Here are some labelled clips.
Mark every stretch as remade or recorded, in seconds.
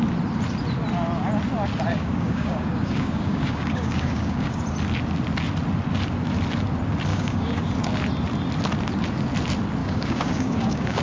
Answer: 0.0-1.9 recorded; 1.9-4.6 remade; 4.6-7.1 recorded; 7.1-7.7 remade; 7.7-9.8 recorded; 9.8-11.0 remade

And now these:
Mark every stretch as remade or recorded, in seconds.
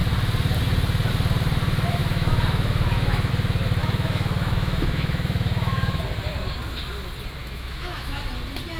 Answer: 0.0-2.0 recorded; 2.0-3.3 remade; 3.3-3.8 recorded; 3.8-6.0 remade; 6.0-7.4 recorded; 7.4-8.2 remade; 8.2-8.8 recorded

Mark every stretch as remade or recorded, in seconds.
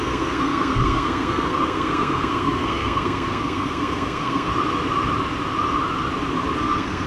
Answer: 0.0-4.5 remade; 4.5-6.6 recorded; 6.6-7.1 remade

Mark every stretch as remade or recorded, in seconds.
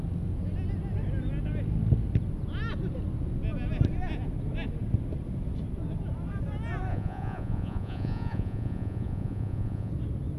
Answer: 0.0-6.9 recorded; 6.9-9.9 remade; 9.9-10.4 recorded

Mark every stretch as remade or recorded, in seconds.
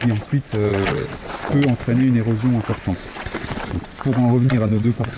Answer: 0.0-0.7 recorded; 0.7-1.5 remade; 1.5-2.7 recorded; 2.7-5.2 remade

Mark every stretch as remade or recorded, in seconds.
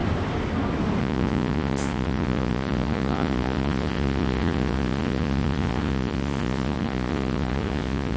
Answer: 0.0-1.0 recorded; 1.0-8.2 remade